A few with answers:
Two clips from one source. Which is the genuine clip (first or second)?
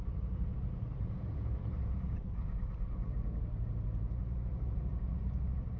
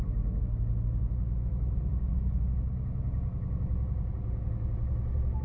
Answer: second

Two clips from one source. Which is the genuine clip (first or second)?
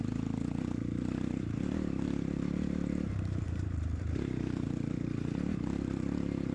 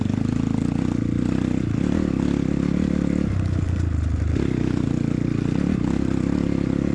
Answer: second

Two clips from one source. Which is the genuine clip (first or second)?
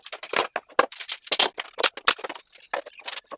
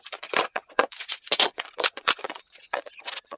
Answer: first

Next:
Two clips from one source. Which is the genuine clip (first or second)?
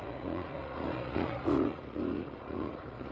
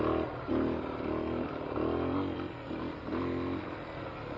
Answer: second